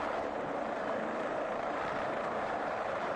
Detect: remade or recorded remade